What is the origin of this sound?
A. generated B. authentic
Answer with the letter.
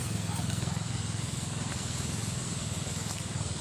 A